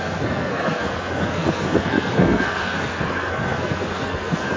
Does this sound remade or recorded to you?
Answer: remade